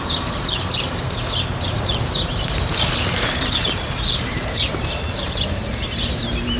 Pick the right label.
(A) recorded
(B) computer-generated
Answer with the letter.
B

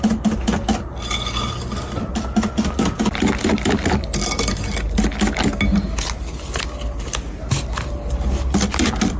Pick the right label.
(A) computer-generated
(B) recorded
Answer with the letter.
B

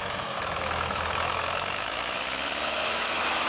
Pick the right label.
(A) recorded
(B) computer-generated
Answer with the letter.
B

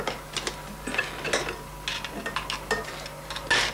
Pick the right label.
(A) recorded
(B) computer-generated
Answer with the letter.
A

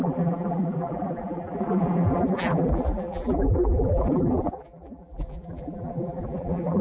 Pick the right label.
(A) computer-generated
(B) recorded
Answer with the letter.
A